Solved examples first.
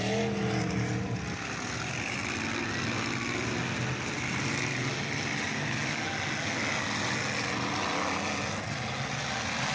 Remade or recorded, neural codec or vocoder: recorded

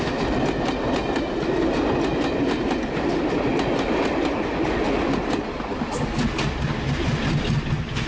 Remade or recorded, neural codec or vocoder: recorded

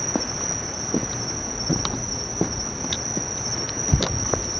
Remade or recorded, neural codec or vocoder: recorded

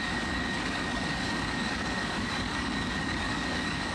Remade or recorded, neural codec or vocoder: remade, codec, DAC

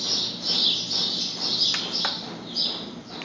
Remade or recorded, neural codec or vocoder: recorded